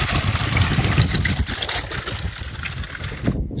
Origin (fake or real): real